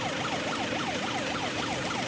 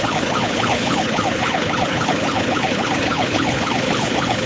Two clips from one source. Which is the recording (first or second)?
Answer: first